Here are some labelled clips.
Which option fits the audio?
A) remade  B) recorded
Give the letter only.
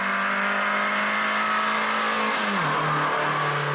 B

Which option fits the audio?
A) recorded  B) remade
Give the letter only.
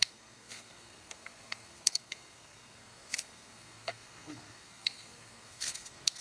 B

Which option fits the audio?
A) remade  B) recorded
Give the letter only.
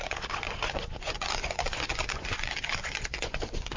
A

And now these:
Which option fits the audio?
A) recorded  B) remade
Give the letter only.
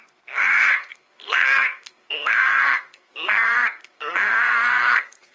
B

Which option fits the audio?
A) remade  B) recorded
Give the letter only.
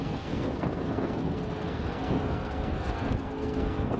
A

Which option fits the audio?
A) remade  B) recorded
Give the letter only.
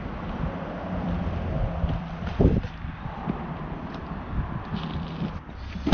A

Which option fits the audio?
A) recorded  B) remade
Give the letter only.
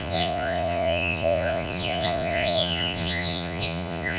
B